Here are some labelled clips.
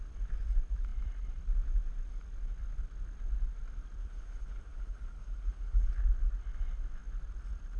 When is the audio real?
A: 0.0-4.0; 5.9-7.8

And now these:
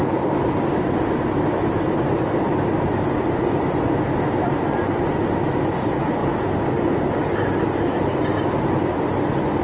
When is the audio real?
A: 0.0-9.6

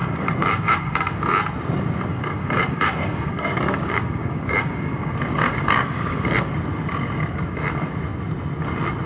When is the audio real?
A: 1.2-2.1; 6.5-9.1

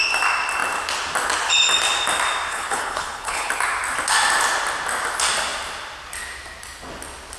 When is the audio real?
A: 0.0-2.5; 3.5-7.4

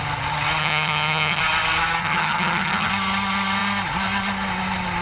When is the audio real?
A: 0.0-0.6; 1.4-2.0; 2.9-5.0

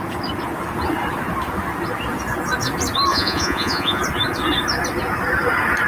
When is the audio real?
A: 0.0-3.1; 4.0-5.9

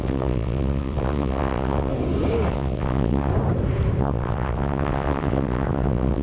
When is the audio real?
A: 1.9-2.5; 3.3-4.0